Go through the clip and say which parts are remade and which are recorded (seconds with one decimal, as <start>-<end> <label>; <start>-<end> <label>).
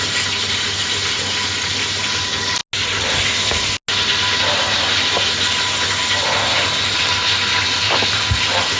0.0-8.8 recorded